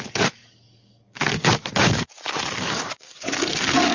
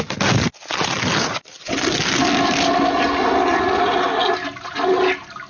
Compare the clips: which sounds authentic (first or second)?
second